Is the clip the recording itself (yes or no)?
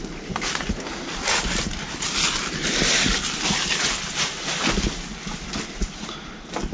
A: yes